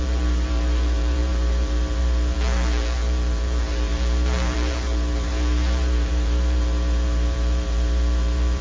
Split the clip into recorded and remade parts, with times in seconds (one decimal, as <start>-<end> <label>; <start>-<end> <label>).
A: 0.0-8.6 remade